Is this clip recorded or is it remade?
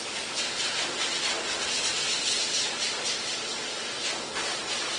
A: recorded